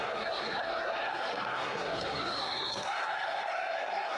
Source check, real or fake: fake